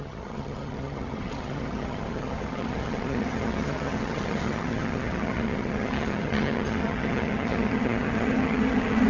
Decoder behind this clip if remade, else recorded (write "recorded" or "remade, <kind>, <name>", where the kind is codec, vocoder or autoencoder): remade, vocoder, HiFi-GAN